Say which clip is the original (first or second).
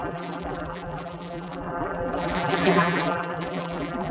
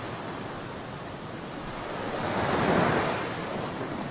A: second